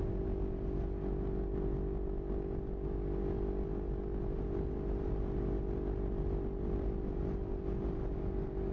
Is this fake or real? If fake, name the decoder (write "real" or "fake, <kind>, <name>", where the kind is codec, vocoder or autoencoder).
real